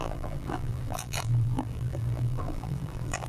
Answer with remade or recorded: remade